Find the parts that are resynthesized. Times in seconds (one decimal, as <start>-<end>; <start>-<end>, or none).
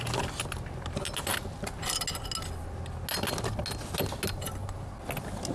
none